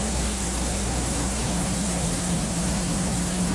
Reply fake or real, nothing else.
fake